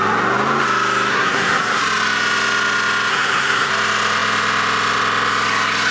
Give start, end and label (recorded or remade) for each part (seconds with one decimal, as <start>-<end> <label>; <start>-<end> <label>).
0.0-1.1 recorded; 1.1-1.8 remade; 1.8-3.1 recorded; 3.1-3.7 remade; 3.7-5.9 recorded